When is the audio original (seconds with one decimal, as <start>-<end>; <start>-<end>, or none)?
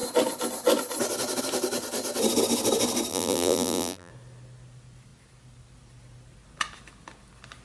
0.0-3.1; 4.1-7.6